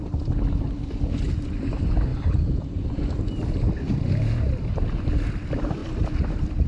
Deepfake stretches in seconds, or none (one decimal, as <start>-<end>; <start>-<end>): none